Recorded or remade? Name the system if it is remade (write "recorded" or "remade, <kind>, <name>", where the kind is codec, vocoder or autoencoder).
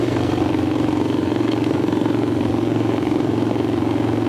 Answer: remade, codec, SNAC